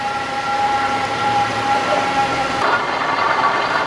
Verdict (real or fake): fake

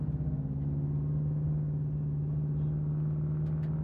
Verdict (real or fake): real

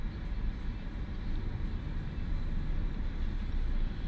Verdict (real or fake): real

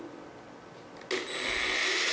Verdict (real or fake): real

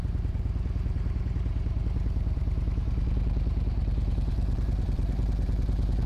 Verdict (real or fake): fake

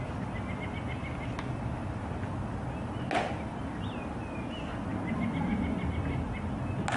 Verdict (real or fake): real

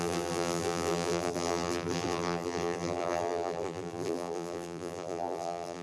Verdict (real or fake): fake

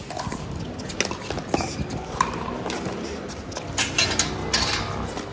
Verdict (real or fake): real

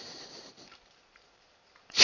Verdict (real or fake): fake